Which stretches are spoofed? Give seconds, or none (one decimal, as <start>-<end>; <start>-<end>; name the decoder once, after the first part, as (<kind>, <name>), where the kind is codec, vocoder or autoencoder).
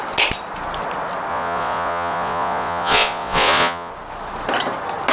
1.3-3.9 (vocoder, Vocos)